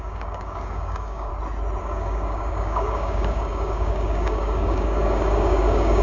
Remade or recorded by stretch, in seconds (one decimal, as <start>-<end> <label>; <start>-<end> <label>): 0.0-1.3 remade; 1.3-1.8 recorded; 1.8-6.0 remade